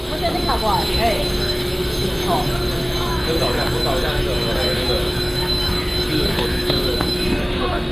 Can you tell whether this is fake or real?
fake